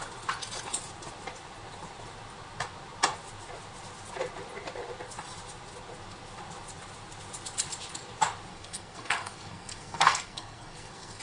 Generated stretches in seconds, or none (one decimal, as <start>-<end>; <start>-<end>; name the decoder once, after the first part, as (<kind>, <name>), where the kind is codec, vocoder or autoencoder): 8.5-11.2 (codec, SNAC)